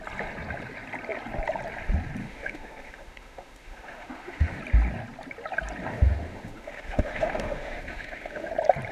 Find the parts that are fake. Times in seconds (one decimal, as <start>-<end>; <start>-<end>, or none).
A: 2.2-4.6; 5.9-8.5